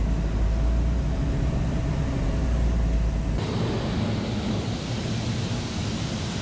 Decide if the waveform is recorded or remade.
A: recorded